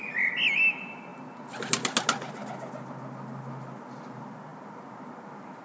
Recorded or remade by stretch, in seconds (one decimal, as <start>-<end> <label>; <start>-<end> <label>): 0.0-5.6 recorded